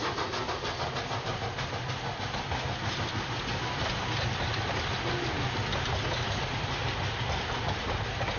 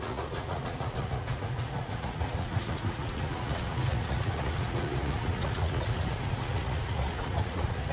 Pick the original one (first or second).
first